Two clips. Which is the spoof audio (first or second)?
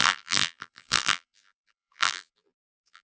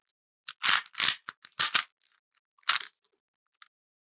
first